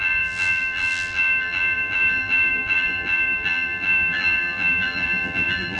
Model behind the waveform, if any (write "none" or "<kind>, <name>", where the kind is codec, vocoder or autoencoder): vocoder, BigVGAN v2